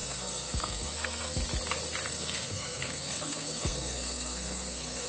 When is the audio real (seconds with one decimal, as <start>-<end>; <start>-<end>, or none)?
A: 1.4-2.1